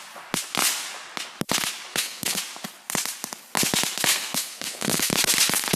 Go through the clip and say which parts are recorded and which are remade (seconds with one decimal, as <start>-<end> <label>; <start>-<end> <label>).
0.0-1.9 recorded; 1.9-2.4 remade; 2.4-4.1 recorded; 4.1-5.1 remade; 5.1-5.8 recorded